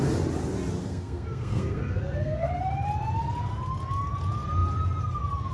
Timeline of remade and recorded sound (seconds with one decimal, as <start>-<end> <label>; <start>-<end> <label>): 0.0-0.8 recorded; 0.8-2.6 remade; 2.6-5.5 recorded